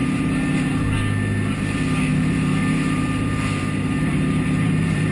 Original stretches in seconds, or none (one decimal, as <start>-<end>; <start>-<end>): 0.7-2.1